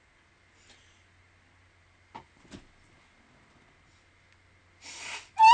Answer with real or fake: real